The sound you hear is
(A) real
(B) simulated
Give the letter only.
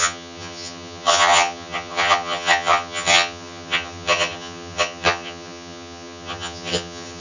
B